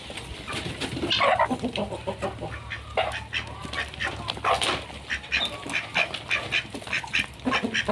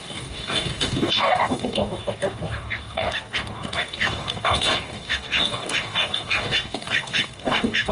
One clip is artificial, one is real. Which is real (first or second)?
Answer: first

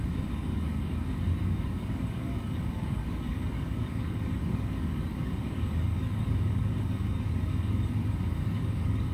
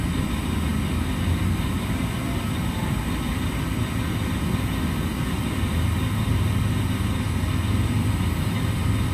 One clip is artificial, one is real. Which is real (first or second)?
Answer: second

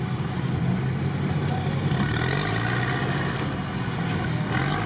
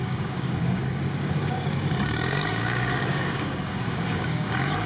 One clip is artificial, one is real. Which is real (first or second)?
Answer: first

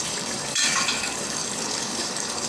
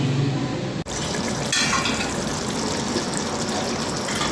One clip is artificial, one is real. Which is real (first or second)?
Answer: second